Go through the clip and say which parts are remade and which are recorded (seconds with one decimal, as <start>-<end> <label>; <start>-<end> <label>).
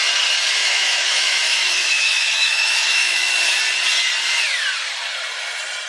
0.0-0.6 recorded; 0.6-3.3 remade; 3.3-5.9 recorded